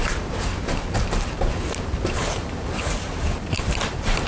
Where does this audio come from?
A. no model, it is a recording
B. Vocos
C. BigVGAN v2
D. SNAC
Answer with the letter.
C